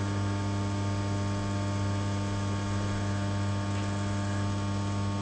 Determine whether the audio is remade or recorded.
recorded